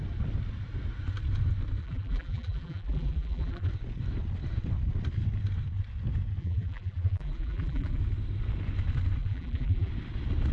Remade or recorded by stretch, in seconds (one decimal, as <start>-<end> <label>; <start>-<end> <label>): 0.0-1.8 recorded; 1.8-3.7 remade; 3.7-6.4 recorded; 6.4-8.0 remade; 8.0-9.2 recorded; 9.2-9.9 remade; 9.9-10.5 recorded